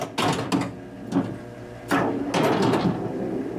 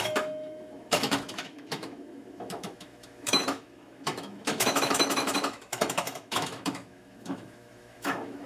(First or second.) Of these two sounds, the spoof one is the second